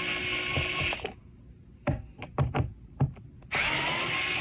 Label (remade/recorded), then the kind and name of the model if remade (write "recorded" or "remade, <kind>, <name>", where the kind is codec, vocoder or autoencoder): recorded